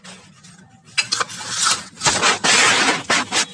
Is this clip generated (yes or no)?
no